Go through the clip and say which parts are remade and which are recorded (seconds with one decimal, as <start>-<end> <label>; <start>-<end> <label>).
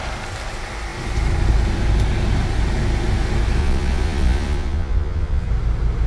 0.0-3.6 recorded; 3.6-5.5 remade; 5.5-6.1 recorded